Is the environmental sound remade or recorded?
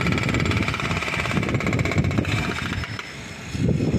recorded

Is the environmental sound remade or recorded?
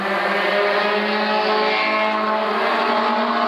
recorded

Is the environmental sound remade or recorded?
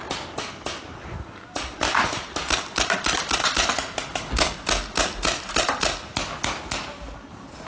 recorded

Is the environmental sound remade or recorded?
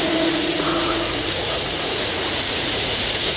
remade